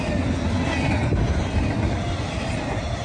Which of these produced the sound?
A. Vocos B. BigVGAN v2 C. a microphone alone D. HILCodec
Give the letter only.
C